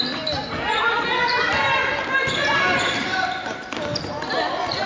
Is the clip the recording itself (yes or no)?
yes